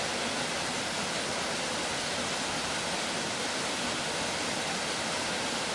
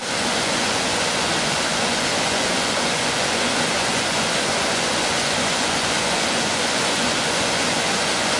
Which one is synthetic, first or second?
second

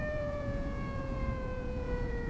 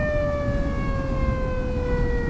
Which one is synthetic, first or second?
first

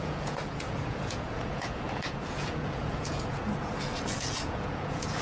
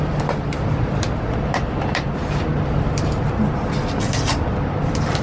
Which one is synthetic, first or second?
first